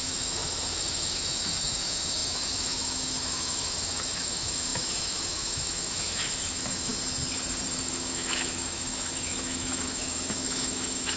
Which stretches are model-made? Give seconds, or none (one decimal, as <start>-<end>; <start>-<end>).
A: 0.0-6.9; 7.8-11.2